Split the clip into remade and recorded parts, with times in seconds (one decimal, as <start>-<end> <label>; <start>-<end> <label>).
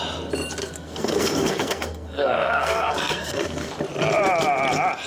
0.0-0.6 recorded; 0.6-3.7 remade; 3.7-5.1 recorded